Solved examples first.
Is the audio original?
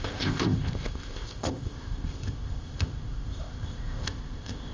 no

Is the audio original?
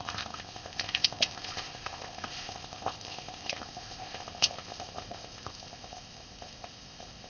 no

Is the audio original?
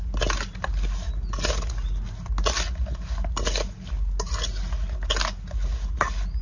yes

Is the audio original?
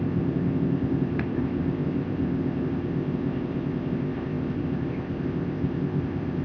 no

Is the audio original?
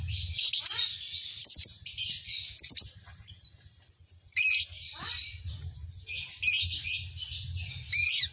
yes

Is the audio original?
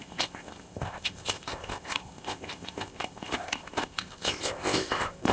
no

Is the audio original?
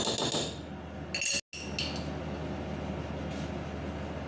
yes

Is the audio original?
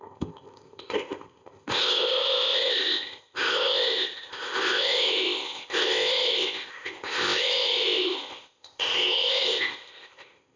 no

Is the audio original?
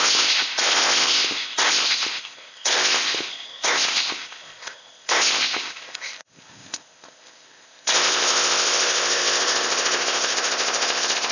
no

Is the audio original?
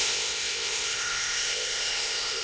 no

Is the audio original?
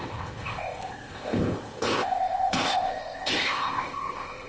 no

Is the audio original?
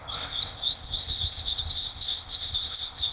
no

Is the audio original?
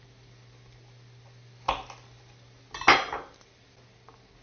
yes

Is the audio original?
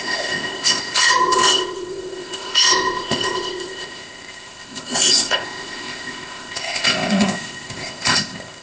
no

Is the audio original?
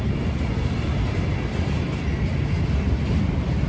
yes